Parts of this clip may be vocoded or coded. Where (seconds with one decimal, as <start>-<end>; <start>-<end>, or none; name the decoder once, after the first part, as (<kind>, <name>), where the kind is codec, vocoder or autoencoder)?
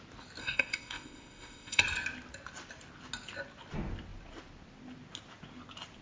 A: 0.4-1.8 (codec, ZipCodec)